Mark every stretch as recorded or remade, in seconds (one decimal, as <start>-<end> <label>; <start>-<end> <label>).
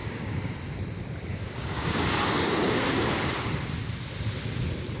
0.0-0.5 remade; 0.5-1.3 recorded; 1.3-3.1 remade; 3.1-5.0 recorded